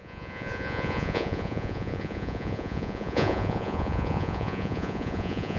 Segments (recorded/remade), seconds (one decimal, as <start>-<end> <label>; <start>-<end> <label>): 0.0-5.6 remade